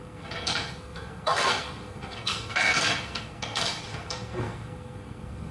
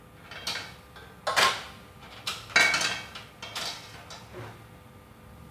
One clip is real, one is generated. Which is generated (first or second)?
first